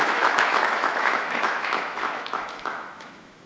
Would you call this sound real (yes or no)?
no